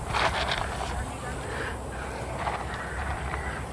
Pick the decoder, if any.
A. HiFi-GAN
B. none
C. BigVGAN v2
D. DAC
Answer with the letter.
B